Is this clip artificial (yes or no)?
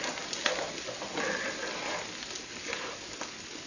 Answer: no